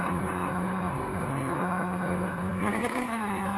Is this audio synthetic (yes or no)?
yes